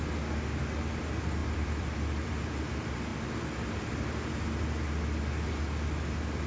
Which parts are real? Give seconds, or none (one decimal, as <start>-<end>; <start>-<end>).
0.0-1.4; 2.3-6.5